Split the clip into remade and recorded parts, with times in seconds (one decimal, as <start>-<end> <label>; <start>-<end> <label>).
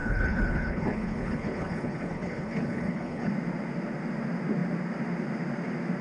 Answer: 0.0-3.3 remade; 3.3-6.0 recorded